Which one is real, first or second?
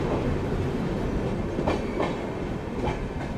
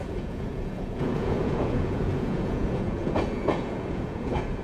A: first